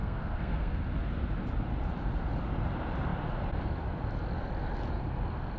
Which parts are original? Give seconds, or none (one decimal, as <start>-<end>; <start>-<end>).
0.8-5.6